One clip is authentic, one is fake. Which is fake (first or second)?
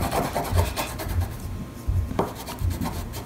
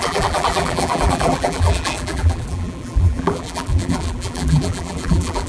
second